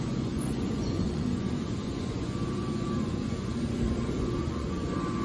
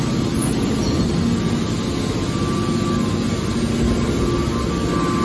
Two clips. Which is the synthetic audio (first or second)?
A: first